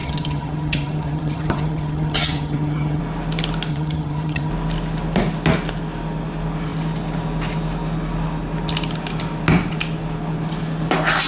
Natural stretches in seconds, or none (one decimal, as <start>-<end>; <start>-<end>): 3.0-3.7; 4.5-11.3